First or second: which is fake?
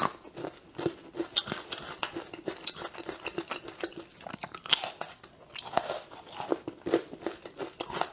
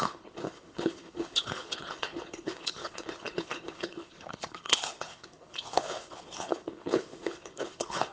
second